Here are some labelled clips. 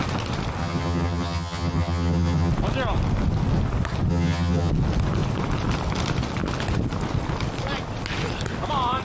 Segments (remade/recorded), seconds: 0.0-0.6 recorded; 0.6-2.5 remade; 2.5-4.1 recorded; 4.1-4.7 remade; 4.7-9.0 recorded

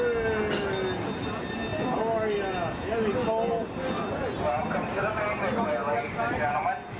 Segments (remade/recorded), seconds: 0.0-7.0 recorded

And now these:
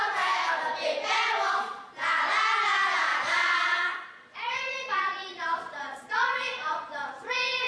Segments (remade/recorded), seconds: 0.0-3.1 recorded; 3.1-7.3 remade; 7.3-7.7 recorded

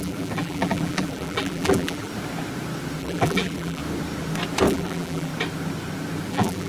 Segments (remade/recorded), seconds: 0.0-2.1 remade; 2.1-3.0 recorded; 3.0-3.8 remade; 3.8-4.7 recorded; 4.7-5.3 remade; 5.3-6.3 recorded; 6.3-6.7 remade

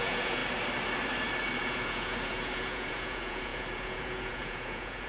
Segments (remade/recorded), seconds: 0.0-0.4 remade; 0.4-1.6 recorded; 1.6-5.1 remade